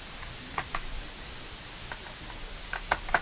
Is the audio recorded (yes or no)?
yes